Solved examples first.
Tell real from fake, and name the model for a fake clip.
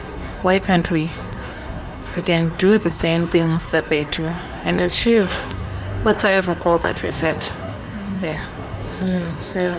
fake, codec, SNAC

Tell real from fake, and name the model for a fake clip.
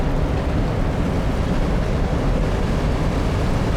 real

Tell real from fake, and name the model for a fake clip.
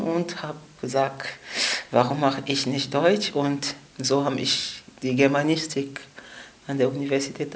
real